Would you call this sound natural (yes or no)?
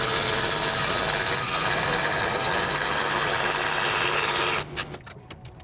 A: yes